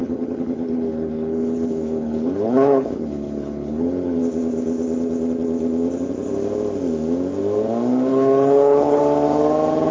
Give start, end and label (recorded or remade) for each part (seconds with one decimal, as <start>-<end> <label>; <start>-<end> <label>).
0.0-4.2 remade; 4.2-8.1 recorded; 8.1-9.0 remade; 9.0-9.9 recorded